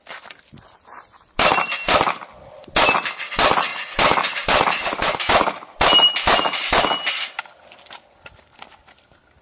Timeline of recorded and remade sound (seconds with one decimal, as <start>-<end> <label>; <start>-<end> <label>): 0.0-9.4 recorded